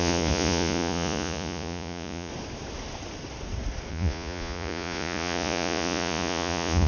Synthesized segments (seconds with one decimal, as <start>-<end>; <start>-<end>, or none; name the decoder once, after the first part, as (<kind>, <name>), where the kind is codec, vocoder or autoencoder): 0.0-2.3 (vocoder, Vocos); 3.9-6.9